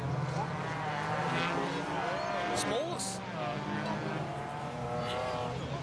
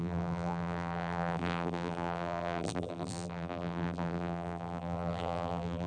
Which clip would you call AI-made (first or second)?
second